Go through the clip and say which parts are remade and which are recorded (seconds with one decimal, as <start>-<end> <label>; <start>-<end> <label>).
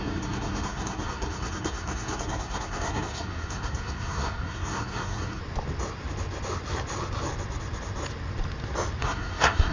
0.0-5.4 remade; 5.4-9.0 recorded; 9.0-9.7 remade